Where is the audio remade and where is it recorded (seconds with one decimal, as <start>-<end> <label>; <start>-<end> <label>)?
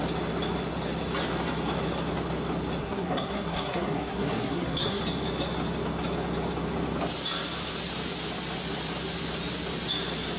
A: 0.0-2.8 recorded; 2.8-5.0 remade; 5.0-10.4 recorded